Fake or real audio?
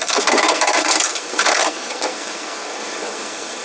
fake